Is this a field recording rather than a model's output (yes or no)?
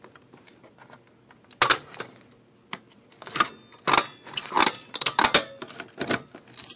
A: yes